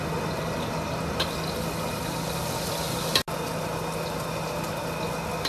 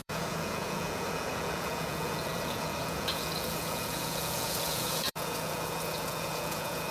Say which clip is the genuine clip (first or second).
first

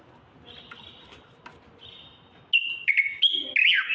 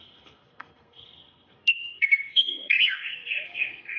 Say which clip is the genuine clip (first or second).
first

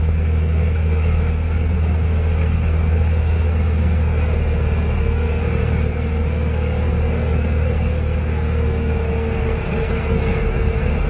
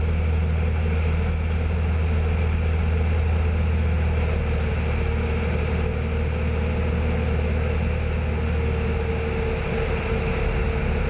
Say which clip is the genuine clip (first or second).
second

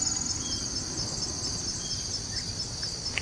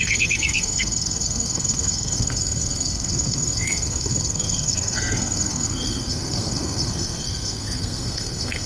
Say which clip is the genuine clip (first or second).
first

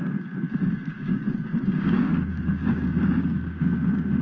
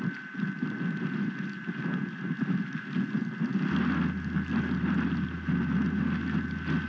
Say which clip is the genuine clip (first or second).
second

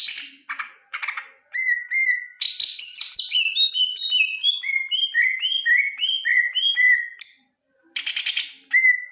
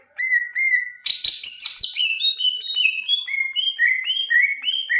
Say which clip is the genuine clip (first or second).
first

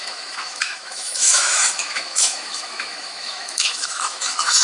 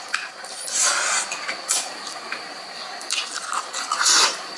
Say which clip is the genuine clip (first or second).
second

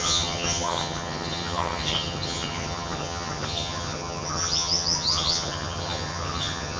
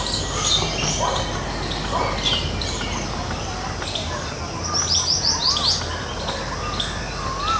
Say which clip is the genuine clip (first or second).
second